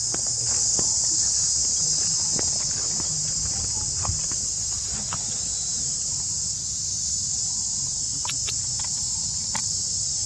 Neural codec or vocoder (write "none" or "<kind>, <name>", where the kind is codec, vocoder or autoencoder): none